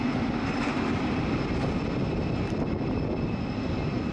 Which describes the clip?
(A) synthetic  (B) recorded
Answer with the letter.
B